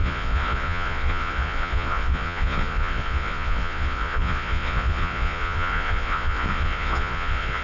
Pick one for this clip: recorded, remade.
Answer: remade